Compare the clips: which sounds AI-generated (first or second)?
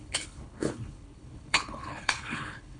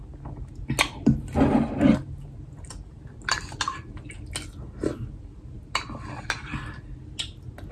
first